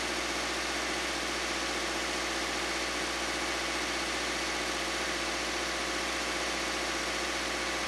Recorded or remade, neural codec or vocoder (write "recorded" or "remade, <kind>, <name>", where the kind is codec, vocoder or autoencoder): recorded